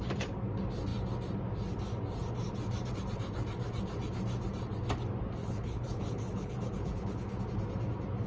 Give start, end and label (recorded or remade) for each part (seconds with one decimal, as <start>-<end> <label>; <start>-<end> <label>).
0.0-5.4 recorded; 5.4-7.4 remade; 7.4-8.3 recorded